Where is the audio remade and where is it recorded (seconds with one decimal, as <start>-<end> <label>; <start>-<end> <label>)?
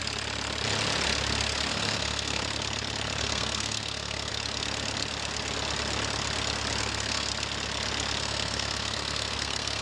0.0-1.7 recorded; 1.7-2.4 remade; 2.4-3.2 recorded; 3.2-4.3 remade; 4.3-6.8 recorded; 6.8-7.3 remade; 7.3-8.2 recorded; 8.2-9.8 remade